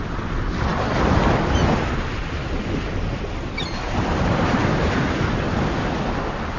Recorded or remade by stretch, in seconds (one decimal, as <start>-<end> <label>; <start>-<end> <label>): 0.0-6.6 recorded